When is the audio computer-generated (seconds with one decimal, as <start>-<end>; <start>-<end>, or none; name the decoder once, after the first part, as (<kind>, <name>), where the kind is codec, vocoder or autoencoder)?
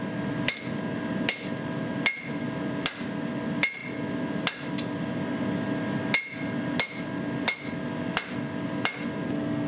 none